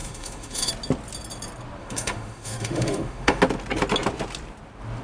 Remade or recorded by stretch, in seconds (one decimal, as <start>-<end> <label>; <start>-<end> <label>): 0.0-0.7 remade; 0.7-1.8 recorded; 1.8-3.4 remade; 3.4-5.0 recorded